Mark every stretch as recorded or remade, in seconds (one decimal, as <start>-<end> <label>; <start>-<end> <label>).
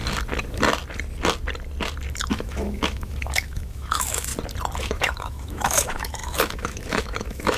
0.0-2.3 recorded; 2.3-4.3 remade; 4.3-4.8 recorded; 4.8-7.6 remade